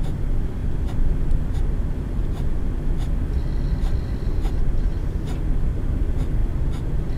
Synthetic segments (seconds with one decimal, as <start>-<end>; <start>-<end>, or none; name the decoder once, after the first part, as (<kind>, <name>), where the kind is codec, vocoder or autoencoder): 0.0-7.2 (vocoder, BigVGAN v2)